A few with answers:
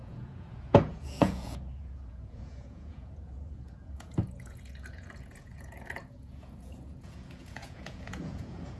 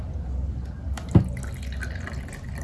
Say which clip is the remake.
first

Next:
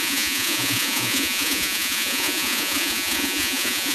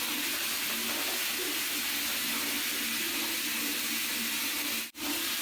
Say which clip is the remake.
first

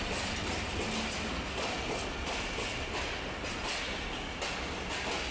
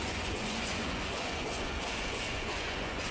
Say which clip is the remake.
second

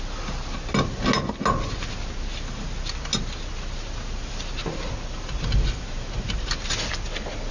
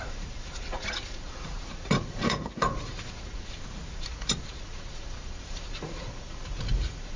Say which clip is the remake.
second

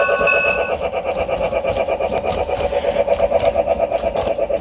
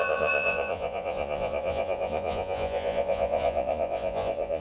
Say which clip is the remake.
second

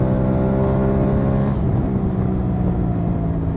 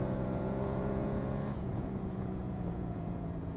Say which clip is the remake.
second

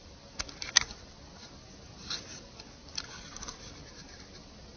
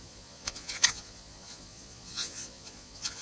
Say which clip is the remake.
second